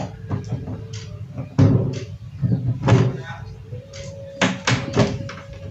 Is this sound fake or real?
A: real